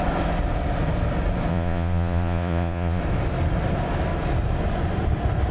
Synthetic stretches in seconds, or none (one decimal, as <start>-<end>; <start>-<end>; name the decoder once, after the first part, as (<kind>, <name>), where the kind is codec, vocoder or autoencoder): 1.5-3.0 (vocoder, Vocos)